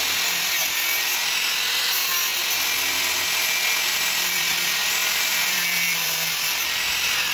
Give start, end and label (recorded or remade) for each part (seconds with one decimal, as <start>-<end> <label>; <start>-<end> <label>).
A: 0.0-3.9 recorded; 3.9-4.5 remade; 4.5-5.0 recorded; 5.0-6.6 remade; 6.6-7.3 recorded